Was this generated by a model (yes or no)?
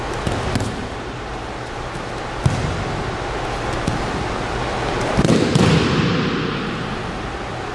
no